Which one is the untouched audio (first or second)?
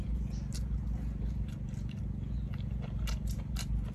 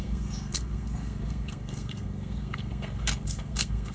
first